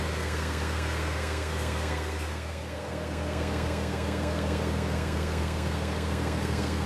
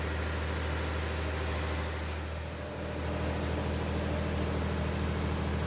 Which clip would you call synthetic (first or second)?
first